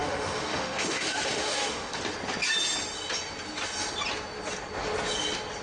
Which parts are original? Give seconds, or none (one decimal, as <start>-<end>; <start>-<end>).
2.0-5.6